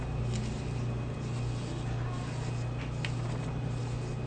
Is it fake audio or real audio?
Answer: real